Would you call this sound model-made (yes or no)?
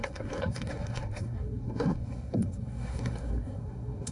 yes